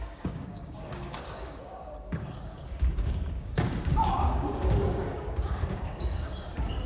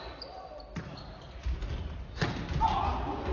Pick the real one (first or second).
second